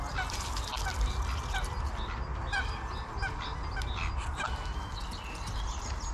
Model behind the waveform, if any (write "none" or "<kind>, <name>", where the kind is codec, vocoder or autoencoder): none